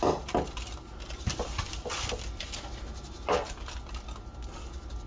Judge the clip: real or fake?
real